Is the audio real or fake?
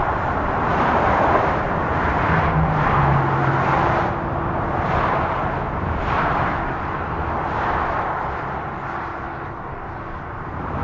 real